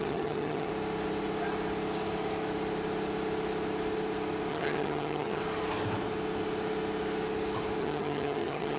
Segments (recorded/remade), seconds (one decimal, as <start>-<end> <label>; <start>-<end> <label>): 0.0-0.7 remade; 0.7-4.5 recorded; 4.5-5.4 remade; 5.4-7.8 recorded; 7.8-8.8 remade